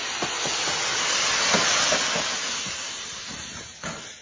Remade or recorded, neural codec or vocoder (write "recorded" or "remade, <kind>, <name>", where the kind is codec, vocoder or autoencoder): recorded